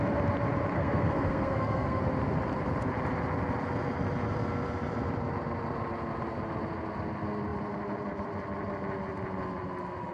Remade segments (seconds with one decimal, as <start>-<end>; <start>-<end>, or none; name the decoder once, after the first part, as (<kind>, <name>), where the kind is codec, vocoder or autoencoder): 0.7-2.0 (codec, SNAC)